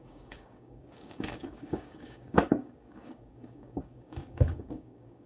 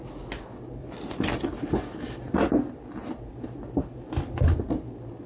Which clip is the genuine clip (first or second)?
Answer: second